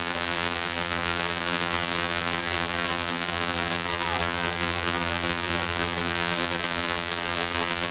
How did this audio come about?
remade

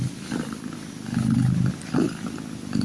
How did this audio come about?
recorded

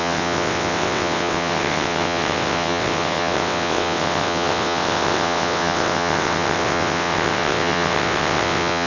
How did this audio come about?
remade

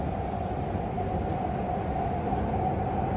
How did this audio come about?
recorded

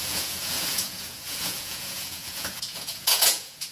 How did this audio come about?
remade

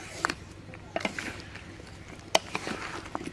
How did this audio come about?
recorded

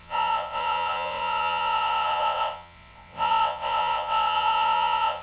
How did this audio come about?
remade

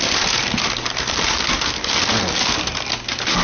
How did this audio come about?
recorded